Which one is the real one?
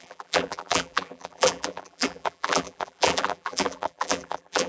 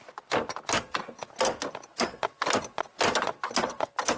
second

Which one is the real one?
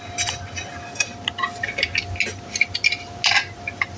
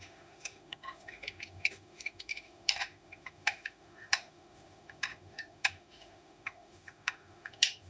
first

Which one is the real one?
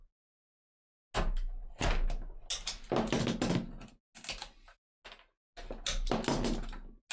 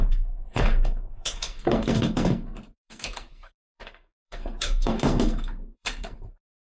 first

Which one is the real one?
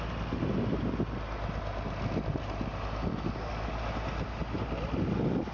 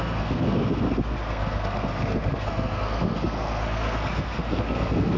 first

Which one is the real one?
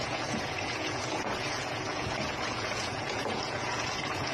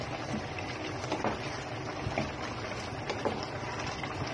second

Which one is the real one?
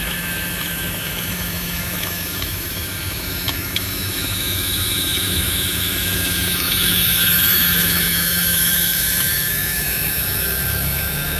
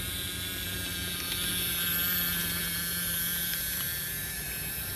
second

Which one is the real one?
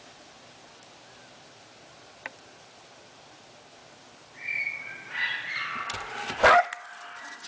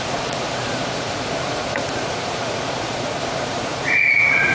first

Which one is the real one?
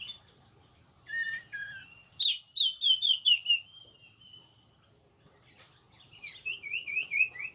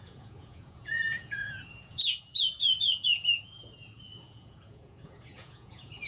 first